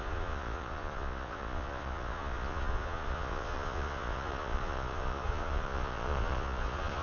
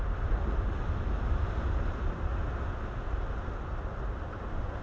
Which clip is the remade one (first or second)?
first